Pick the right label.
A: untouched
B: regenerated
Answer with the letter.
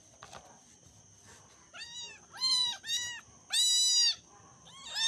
A